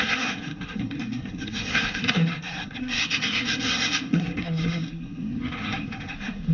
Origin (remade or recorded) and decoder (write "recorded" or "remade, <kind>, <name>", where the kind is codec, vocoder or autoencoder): remade, codec, SNAC